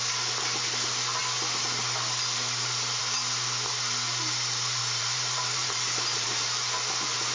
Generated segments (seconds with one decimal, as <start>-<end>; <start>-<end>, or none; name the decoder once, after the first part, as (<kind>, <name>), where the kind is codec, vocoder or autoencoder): 4.8-7.3 (vocoder, BigVGAN v2)